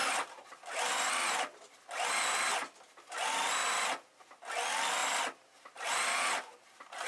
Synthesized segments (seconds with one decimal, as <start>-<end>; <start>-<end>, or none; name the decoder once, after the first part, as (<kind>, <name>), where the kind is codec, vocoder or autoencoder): 0.0-2.5 (vocoder, BigVGAN v2); 5.0-7.1